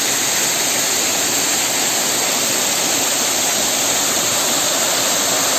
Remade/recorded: recorded